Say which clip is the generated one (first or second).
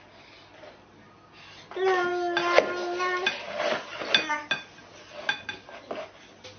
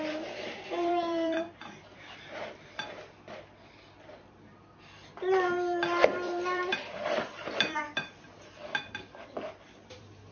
second